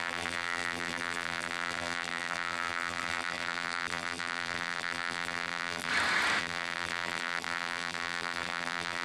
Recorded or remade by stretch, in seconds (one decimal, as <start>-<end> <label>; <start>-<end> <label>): 0.0-5.9 remade; 5.9-6.4 recorded; 6.4-9.0 remade